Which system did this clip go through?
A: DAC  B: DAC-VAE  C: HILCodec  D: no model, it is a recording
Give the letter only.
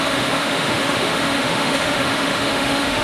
B